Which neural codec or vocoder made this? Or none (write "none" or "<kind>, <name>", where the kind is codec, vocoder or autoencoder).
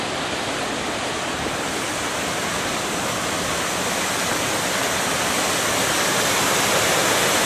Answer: vocoder, BigVGAN v2